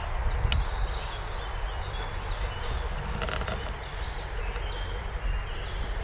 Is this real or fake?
real